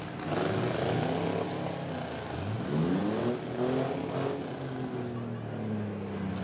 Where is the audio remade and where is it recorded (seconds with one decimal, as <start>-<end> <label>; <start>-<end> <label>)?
0.0-6.4 recorded